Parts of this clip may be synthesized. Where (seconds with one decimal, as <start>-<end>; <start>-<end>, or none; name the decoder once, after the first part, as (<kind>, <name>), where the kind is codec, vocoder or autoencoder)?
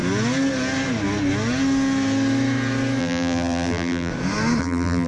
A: 3.0-4.1 (vocoder, BigVGAN v2); 4.6-5.1